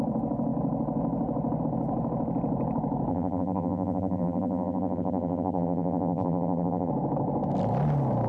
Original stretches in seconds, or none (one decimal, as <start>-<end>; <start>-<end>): 0.0-3.1; 6.9-8.3